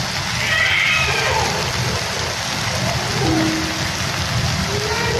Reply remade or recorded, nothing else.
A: recorded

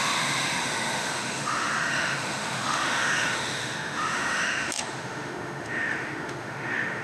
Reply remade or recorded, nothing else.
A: remade